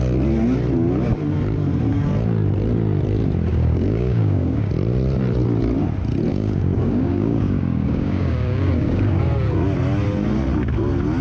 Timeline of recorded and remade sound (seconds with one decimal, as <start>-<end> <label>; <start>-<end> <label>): 0.0-3.5 recorded; 3.5-4.7 remade; 4.7-6.3 recorded; 6.3-9.2 remade; 9.2-11.2 recorded